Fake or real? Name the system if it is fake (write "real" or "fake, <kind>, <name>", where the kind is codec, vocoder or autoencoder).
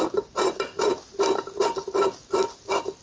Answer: real